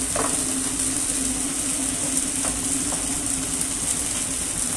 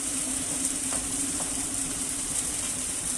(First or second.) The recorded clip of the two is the first